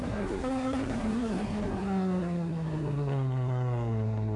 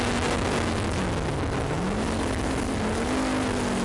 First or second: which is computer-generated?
first